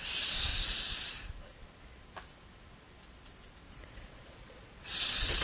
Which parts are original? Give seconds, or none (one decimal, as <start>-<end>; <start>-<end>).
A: 0.5-3.7